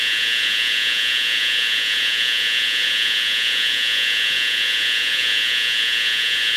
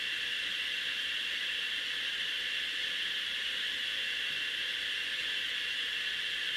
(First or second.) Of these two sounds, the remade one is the first